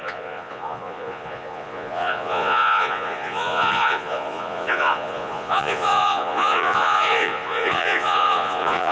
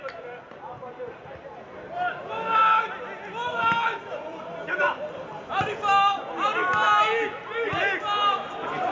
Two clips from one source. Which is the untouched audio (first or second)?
second